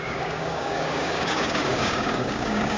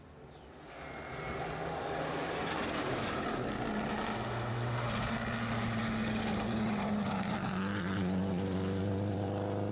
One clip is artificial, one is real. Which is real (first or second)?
second